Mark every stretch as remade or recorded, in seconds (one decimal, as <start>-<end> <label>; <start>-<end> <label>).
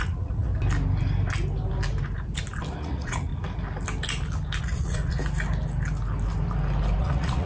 0.0-0.5 remade; 0.5-2.8 recorded; 2.8-3.3 remade; 3.3-4.6 recorded; 4.6-5.2 remade; 5.2-7.0 recorded; 7.0-7.5 remade